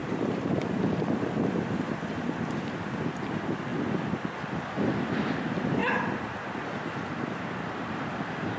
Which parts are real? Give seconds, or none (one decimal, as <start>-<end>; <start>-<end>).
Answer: 0.0-8.6